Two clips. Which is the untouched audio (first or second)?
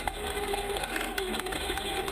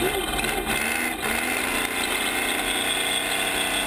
second